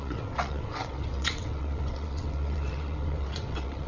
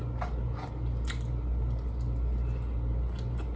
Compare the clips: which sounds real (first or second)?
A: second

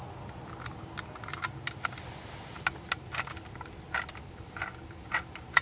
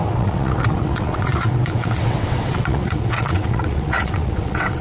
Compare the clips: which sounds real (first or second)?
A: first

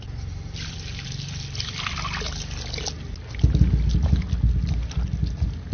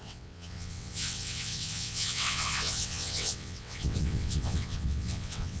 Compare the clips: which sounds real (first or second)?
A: first